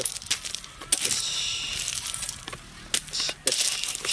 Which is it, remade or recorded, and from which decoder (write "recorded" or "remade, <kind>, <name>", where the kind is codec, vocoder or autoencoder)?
recorded